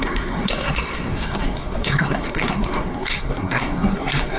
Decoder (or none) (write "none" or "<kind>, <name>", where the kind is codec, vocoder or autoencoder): codec, SNAC